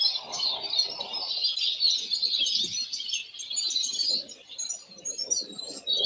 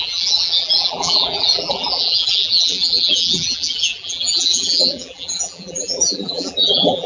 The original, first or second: first